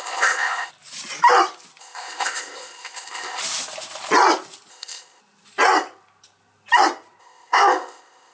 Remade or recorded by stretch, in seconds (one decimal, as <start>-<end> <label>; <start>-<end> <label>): 0.0-0.7 remade; 0.7-1.8 recorded; 1.8-3.4 remade; 3.4-4.7 recorded; 4.7-5.2 remade; 5.2-7.2 recorded; 7.2-8.3 remade